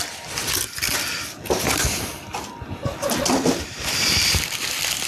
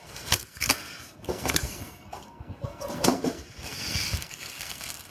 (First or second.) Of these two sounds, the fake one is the second